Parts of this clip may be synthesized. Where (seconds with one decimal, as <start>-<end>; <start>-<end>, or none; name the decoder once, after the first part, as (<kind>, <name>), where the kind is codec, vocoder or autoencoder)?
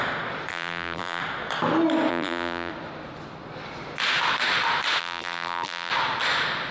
0.5-1.2 (vocoder, BigVGAN v2); 2.1-2.7; 5.0-5.9